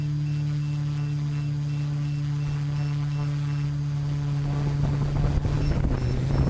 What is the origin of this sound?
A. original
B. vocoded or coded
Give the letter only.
A